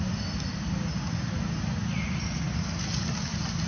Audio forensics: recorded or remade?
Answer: recorded